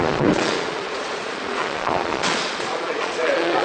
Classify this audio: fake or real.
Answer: fake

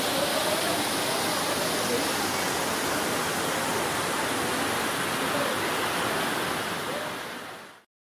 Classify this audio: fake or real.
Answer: real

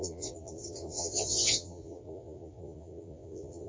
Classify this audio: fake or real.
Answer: fake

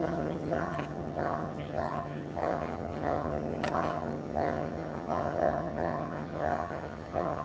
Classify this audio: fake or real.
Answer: fake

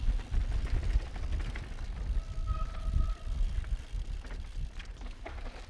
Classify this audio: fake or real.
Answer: real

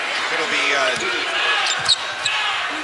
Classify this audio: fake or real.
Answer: fake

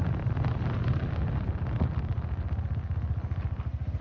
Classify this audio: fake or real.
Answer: real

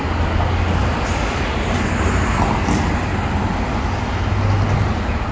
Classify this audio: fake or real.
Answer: real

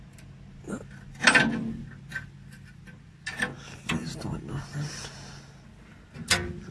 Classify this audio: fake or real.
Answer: real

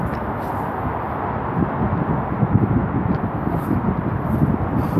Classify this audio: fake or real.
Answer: real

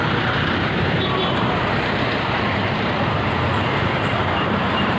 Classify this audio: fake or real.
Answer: fake